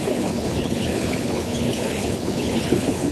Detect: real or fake fake